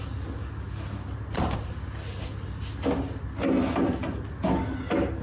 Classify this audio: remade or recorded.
recorded